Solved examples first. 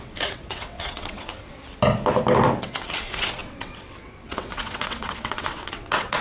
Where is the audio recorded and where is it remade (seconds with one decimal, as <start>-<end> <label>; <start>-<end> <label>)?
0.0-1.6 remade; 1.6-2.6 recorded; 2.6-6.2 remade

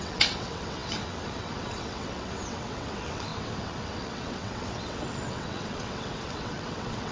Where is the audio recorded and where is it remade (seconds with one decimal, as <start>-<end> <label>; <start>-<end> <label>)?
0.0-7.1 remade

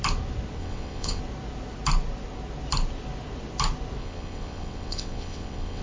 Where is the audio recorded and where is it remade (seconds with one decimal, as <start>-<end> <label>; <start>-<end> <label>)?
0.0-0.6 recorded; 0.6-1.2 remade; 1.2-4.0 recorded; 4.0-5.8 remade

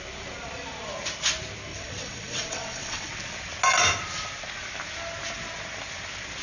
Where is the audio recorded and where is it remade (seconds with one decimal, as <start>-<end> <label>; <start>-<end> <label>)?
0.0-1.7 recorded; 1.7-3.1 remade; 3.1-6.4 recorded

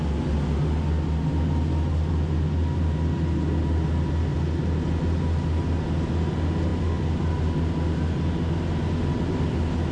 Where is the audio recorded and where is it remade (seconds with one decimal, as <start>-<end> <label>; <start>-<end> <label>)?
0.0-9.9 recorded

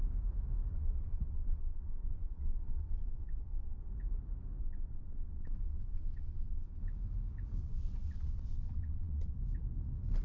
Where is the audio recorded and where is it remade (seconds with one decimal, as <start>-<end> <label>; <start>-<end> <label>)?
0.0-0.7 recorded; 0.7-3.9 remade; 3.9-4.6 recorded; 4.6-6.8 remade; 6.8-7.6 recorded; 7.6-9.4 remade; 9.4-10.2 recorded

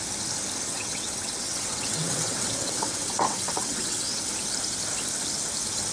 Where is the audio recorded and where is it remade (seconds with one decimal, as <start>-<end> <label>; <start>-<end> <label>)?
0.0-0.7 recorded; 0.7-4.2 remade; 4.2-5.9 recorded

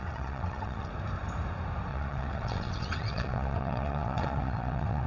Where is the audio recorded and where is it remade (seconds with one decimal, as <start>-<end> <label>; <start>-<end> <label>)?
0.0-0.9 remade; 0.9-1.9 recorded; 1.9-5.1 remade